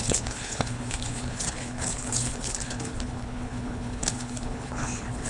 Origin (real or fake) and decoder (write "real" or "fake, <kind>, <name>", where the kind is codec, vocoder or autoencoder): fake, codec, HILCodec